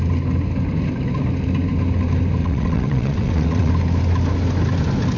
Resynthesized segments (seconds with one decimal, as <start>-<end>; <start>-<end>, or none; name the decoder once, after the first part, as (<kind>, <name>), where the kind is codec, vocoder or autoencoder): 2.4-3.7 (vocoder, WaveNeXt)